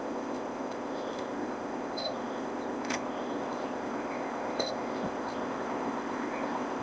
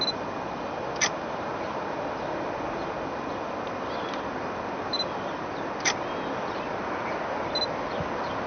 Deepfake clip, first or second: first